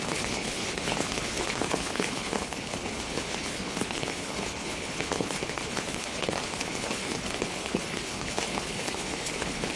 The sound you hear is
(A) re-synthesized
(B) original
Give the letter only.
A